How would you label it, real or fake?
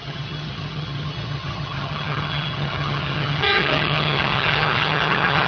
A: fake